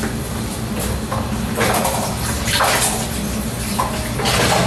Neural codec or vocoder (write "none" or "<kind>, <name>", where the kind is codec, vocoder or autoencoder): none